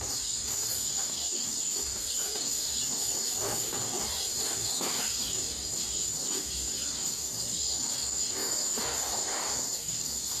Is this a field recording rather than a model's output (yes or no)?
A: no